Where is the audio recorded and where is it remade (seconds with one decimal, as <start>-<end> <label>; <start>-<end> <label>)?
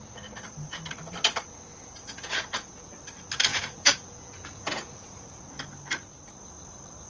0.0-1.7 recorded; 1.7-2.9 remade; 2.9-3.5 recorded; 3.5-5.4 remade; 5.4-7.1 recorded